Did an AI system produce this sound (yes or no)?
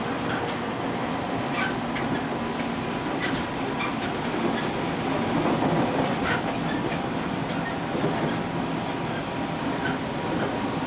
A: no